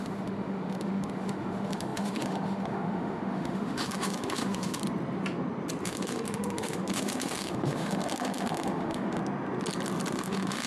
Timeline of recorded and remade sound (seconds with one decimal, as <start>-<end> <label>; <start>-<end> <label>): 0.0-4.8 remade; 4.8-5.8 recorded; 5.8-9.2 remade; 9.2-10.1 recorded; 10.1-10.7 remade